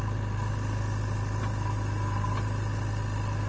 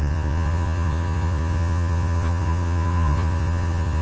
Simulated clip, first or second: second